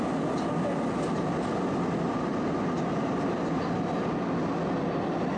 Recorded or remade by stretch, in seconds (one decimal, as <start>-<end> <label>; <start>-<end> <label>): 0.0-5.4 recorded